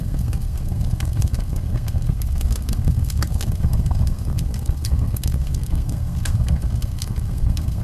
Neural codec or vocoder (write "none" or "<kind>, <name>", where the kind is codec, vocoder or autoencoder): codec, SNAC